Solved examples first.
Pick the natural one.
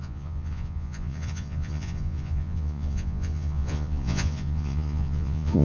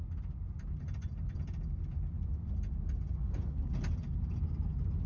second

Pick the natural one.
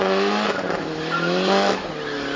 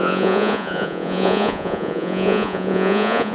first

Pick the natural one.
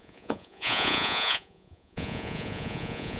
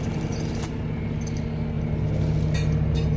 second